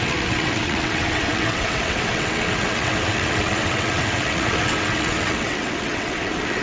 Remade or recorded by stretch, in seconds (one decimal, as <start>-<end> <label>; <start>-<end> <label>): 0.0-6.6 remade